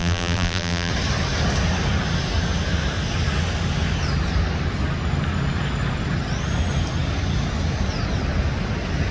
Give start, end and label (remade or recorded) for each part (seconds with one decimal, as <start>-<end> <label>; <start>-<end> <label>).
0.0-0.9 remade; 0.9-9.1 recorded